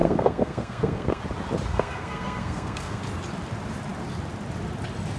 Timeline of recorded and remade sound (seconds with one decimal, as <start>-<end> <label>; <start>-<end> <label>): 0.0-1.2 remade; 1.2-1.7 recorded; 1.7-3.0 remade; 3.0-5.2 recorded